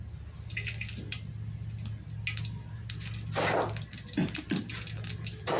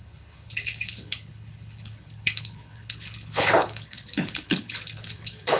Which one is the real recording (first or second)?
first